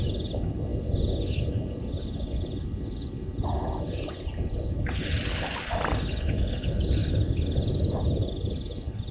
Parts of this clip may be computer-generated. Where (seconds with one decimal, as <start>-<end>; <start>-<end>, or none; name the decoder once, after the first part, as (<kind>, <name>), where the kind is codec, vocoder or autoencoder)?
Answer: none